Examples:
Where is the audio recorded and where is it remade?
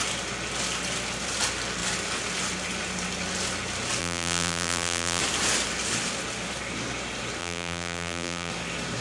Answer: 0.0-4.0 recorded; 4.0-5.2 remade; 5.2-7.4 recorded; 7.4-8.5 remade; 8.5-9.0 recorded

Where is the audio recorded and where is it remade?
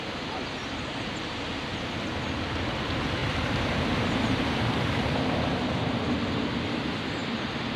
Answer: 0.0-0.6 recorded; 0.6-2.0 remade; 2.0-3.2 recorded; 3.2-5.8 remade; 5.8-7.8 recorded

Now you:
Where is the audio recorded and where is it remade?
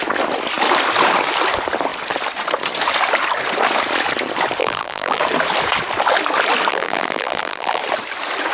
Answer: 0.0-4.6 recorded; 4.6-5.2 remade; 5.2-6.7 recorded; 6.7-7.8 remade; 7.8-8.5 recorded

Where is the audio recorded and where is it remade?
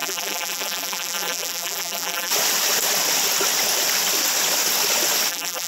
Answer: 0.0-2.3 remade; 2.3-5.3 recorded; 5.3-5.7 remade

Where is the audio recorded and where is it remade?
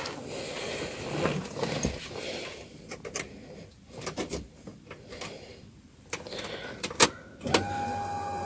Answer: 0.0-2.4 recorded; 2.4-7.1 remade; 7.1-8.5 recorded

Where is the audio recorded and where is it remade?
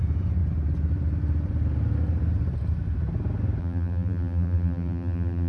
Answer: 0.0-3.6 recorded; 3.6-5.5 remade